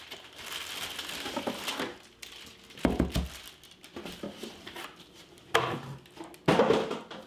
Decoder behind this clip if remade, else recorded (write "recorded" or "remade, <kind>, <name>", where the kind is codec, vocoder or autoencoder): recorded